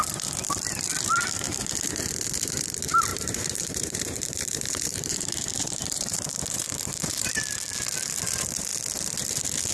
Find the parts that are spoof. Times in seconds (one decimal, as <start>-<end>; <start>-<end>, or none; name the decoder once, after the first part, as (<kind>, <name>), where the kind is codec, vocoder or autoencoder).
3.1-7.3 (vocoder, BigVGAN v2)